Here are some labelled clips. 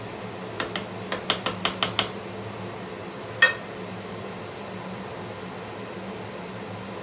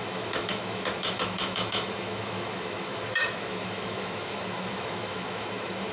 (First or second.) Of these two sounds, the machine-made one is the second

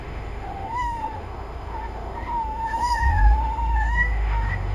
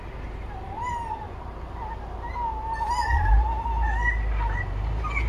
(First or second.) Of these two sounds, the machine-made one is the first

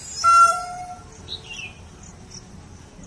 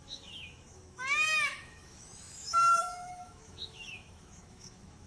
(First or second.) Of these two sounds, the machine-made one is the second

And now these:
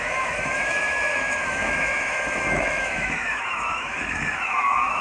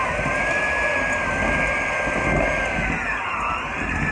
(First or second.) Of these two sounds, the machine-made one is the first